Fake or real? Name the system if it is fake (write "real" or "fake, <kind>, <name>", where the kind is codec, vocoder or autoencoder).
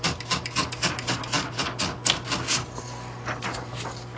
real